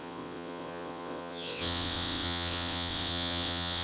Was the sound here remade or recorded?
remade